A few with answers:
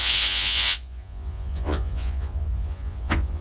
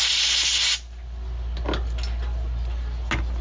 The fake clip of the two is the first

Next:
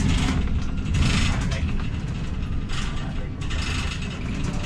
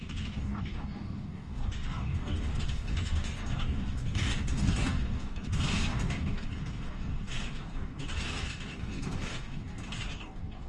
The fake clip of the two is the second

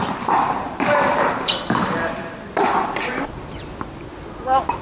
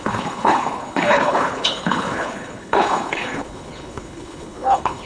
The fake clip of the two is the second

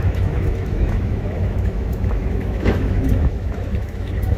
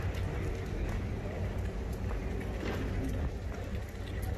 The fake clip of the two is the first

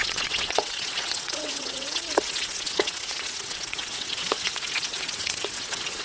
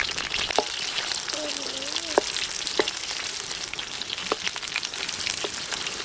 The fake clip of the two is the first